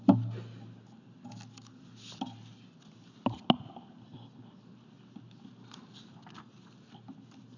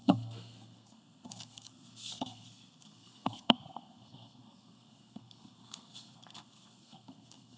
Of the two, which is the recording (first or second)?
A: first